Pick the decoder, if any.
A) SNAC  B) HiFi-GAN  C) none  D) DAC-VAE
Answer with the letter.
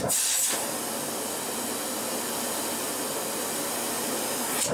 C